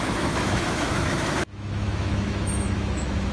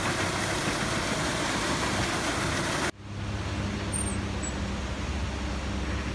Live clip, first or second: second